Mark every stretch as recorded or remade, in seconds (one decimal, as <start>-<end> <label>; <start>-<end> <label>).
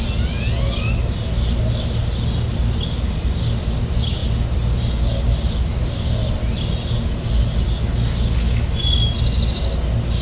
0.0-10.2 recorded